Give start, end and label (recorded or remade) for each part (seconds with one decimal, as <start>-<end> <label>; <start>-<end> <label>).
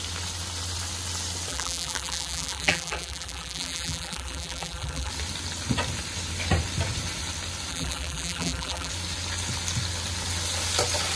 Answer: 0.0-1.5 recorded; 1.5-5.1 remade; 5.1-7.7 recorded; 7.7-8.9 remade; 8.9-11.2 recorded